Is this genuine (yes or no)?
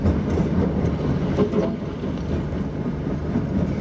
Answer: yes